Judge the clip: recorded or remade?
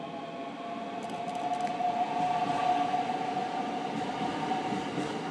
recorded